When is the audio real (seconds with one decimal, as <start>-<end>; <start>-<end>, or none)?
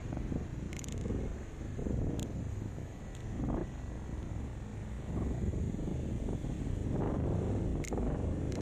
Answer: 0.0-2.5; 3.0-8.6